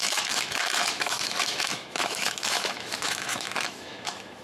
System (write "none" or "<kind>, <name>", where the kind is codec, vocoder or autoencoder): autoencoder, DAC-VAE